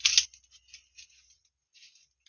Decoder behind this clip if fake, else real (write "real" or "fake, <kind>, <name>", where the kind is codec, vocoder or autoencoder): real